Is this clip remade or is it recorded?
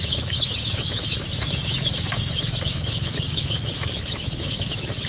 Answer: remade